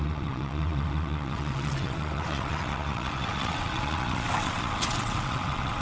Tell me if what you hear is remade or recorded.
remade